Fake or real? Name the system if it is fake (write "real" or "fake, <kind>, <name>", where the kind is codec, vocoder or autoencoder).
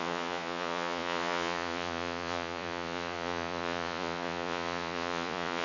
fake, vocoder, Vocos